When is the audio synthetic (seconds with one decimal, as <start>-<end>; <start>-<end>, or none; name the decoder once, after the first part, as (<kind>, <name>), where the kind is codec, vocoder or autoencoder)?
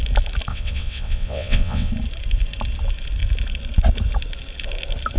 0.5-1.9 (vocoder, WaveNeXt)